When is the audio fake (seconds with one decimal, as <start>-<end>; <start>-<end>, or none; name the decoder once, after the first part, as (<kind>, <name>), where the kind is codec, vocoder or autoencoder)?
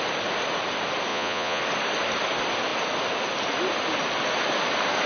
1.1-1.6 (vocoder, Vocos)